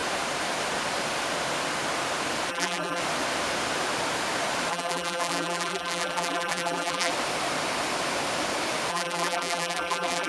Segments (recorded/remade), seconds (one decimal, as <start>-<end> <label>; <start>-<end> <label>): 0.0-2.5 recorded; 2.5-3.0 remade; 3.0-4.7 recorded; 4.7-7.1 remade; 7.1-8.9 recorded; 8.9-10.3 remade